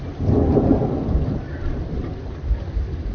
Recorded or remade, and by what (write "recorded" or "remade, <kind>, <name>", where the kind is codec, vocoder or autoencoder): recorded